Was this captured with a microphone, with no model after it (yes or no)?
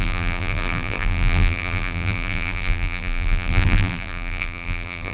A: no